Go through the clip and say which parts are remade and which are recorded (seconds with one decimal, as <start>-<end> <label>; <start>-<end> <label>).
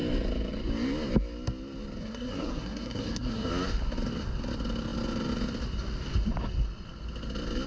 0.0-2.0 recorded; 2.0-3.5 remade; 3.5-7.7 recorded